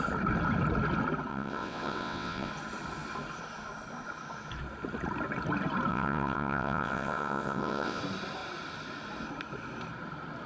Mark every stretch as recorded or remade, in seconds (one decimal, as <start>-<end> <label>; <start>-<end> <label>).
0.0-1.3 recorded; 1.3-2.5 remade; 2.5-5.9 recorded; 5.9-8.0 remade; 8.0-10.5 recorded